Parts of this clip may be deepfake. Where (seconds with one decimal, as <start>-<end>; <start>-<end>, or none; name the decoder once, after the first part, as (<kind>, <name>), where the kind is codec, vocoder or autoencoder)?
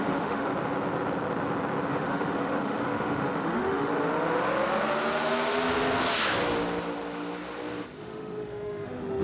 0.0-0.5 (autoencoder, DAC-VAE); 1.9-3.9; 8.0-9.2